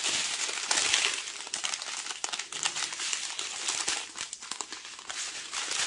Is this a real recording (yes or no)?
yes